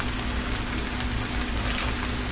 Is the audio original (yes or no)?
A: yes